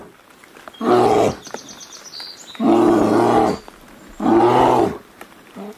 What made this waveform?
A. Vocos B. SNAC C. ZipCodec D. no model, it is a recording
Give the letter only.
D